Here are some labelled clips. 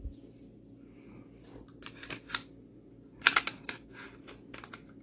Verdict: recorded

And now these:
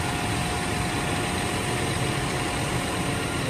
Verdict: recorded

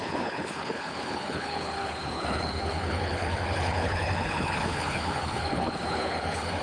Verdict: remade